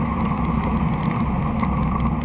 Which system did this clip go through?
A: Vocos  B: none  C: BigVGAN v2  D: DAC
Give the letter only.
B